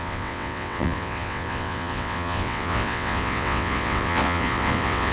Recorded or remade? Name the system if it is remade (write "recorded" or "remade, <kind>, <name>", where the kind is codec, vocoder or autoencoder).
remade, vocoder, WaveNeXt